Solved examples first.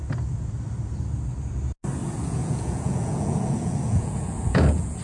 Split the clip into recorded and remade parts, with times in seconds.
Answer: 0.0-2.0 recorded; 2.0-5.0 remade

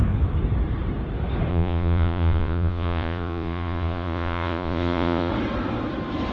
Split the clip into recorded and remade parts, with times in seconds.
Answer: 0.0-1.5 recorded; 1.5-5.3 remade; 5.3-6.3 recorded

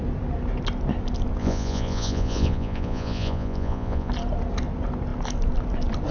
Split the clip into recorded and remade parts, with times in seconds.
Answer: 0.0-1.4 recorded; 1.4-4.1 remade; 4.1-6.1 recorded